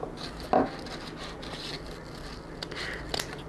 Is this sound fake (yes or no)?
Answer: no